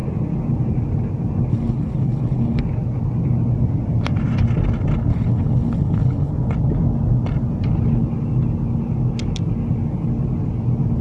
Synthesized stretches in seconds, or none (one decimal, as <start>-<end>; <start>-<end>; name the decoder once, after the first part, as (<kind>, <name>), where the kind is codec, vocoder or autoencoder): 1.5-2.6 (codec, HILCodec); 5.1-6.3